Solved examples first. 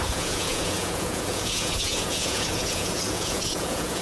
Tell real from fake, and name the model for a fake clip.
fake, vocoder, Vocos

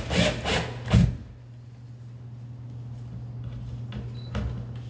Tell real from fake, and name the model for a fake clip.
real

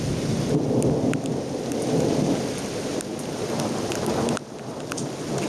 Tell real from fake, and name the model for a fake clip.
real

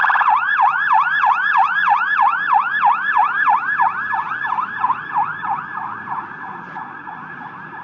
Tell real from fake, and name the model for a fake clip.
fake, vocoder, Vocos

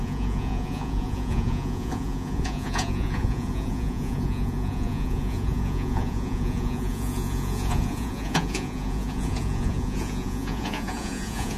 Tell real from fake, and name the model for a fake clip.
fake, vocoder, Vocos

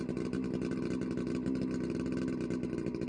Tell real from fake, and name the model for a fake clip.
real